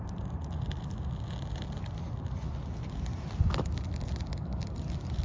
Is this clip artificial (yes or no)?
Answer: no